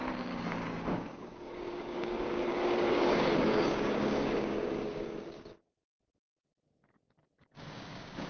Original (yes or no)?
no